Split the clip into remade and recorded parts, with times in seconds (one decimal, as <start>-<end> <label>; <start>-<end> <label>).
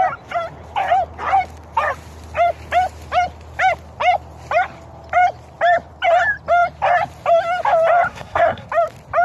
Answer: 0.0-8.1 recorded; 8.1-8.7 remade; 8.7-9.2 recorded